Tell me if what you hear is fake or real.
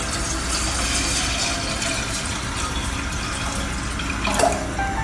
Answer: real